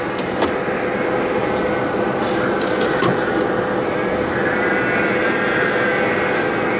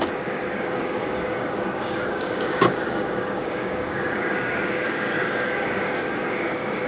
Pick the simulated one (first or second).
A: second